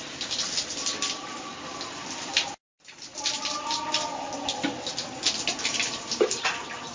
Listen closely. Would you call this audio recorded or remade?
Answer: recorded